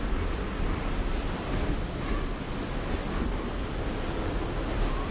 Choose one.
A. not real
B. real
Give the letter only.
B